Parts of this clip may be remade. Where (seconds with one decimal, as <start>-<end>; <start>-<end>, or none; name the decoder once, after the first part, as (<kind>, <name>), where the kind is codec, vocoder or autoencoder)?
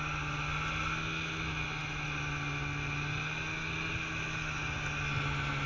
none